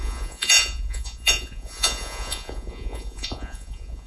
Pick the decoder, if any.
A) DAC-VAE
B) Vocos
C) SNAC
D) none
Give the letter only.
B